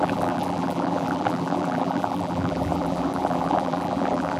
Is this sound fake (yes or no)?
yes